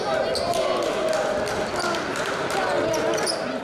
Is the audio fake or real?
real